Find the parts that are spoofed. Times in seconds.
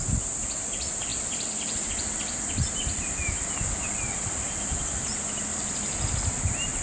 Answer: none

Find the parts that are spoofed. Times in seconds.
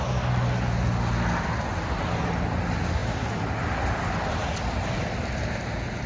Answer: none